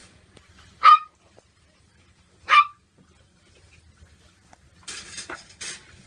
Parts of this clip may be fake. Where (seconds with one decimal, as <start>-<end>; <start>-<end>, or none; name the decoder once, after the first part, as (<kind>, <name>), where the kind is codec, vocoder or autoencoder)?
0.0-2.6 (vocoder, BigVGAN v2)